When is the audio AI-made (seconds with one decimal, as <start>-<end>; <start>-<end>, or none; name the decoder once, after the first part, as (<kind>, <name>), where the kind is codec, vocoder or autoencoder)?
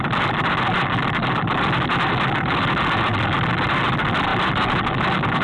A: none